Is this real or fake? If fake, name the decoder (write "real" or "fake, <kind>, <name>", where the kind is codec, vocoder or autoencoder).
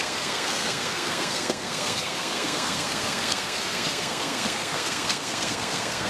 fake, codec, SNAC